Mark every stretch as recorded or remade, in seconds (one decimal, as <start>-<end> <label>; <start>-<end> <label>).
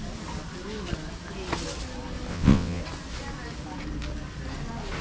0.0-2.3 recorded; 2.3-2.8 remade; 2.8-5.0 recorded